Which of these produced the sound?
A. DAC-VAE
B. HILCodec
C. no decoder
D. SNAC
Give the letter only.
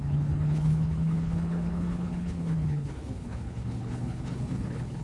B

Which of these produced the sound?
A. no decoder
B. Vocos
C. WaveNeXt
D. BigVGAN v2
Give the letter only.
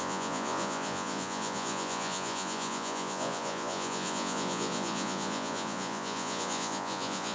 B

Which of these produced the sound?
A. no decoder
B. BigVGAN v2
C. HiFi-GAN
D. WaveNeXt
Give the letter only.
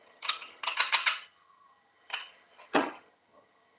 C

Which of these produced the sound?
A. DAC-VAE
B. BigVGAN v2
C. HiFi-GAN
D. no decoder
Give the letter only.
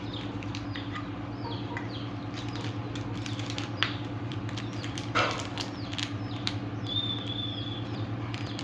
B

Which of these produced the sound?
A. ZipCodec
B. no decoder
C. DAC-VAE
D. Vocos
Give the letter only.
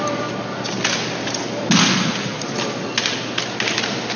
B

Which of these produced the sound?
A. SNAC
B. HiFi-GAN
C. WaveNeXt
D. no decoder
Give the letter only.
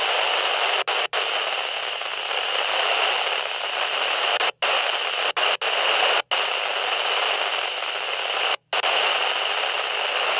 D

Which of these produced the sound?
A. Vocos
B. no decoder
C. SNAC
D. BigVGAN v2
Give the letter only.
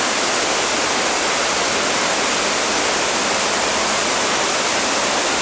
B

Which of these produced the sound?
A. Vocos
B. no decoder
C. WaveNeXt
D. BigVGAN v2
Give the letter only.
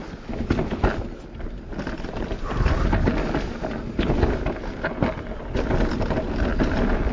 B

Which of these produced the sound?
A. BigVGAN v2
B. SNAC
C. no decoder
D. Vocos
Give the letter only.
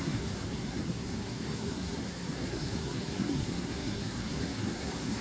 B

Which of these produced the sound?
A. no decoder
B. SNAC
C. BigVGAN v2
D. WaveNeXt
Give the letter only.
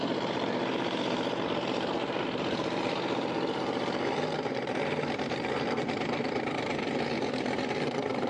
C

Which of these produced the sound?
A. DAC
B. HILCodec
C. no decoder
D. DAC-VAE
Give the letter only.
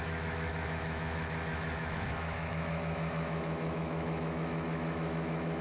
D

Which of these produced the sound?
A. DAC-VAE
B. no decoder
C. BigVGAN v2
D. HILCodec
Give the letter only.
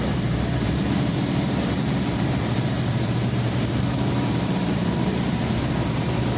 C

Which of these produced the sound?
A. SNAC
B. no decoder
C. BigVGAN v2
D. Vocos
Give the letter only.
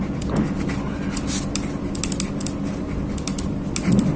B